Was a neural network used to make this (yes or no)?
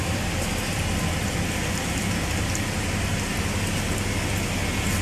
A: no